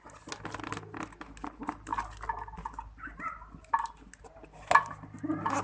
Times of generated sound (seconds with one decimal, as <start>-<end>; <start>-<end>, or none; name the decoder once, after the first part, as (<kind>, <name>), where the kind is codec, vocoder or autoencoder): none